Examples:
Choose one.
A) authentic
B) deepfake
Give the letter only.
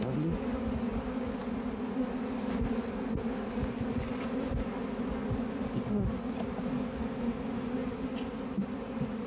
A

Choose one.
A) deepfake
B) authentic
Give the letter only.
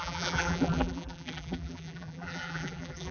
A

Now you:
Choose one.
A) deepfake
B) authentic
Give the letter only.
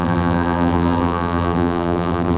A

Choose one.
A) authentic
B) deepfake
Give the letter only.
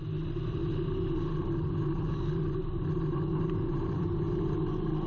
A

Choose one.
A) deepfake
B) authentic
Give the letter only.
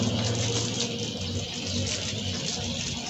B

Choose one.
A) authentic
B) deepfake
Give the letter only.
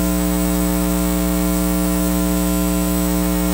B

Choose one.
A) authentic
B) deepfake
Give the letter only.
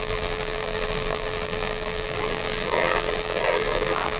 B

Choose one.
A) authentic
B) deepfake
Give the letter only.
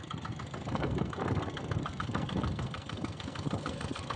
B